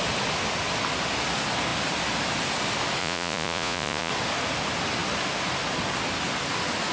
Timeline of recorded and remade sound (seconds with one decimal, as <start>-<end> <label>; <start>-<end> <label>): 0.0-3.0 recorded; 3.0-4.1 remade; 4.1-6.9 recorded